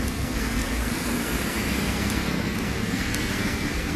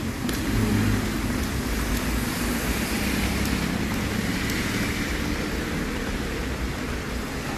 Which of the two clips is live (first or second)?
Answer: second